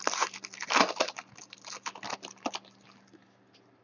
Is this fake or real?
real